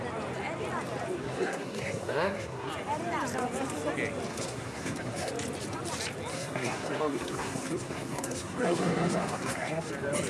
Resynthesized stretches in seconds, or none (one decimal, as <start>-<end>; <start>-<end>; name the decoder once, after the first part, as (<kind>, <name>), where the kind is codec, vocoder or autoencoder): 1.2-2.7 (codec, SNAC); 4.3-5.3; 6.3-9.9